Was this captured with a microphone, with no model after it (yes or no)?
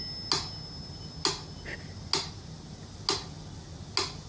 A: yes